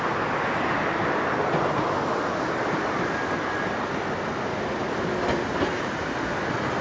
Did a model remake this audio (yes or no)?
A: no